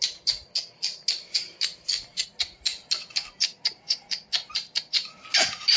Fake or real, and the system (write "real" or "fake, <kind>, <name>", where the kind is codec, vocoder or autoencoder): real